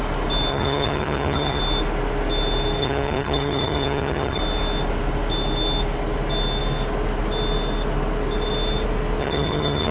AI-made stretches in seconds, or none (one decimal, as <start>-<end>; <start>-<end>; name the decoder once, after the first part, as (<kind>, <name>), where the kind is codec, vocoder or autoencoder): 0.5-1.6 (vocoder, HiFi-GAN); 2.8-4.4; 9.2-9.9